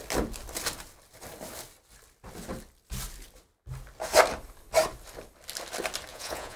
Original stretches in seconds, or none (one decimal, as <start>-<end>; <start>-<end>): 0.0-6.1